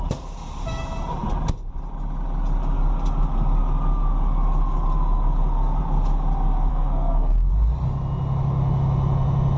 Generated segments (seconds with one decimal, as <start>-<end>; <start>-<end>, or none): 6.7-7.5